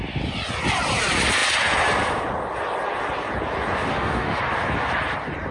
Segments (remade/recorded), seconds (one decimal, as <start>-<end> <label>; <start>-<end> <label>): 0.0-3.9 recorded; 3.9-4.4 remade; 4.4-5.5 recorded